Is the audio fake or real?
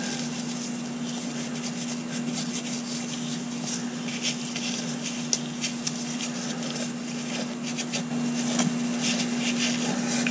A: real